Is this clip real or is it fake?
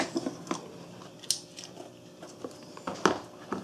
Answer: real